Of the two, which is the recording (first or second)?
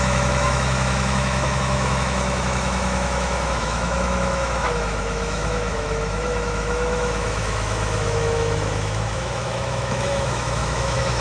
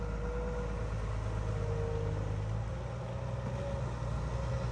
second